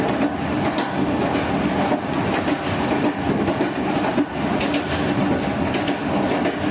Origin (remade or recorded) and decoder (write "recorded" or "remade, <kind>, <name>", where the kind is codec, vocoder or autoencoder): recorded